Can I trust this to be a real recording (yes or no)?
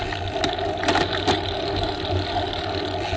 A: yes